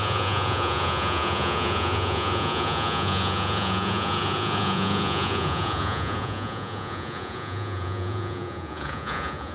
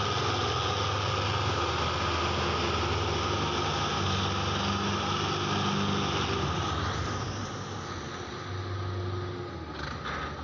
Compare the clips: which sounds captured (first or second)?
second